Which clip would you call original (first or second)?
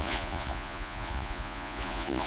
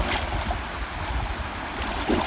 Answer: second